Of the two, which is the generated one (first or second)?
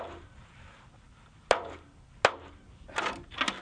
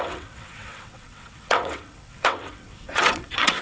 second